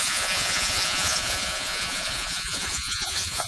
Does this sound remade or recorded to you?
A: remade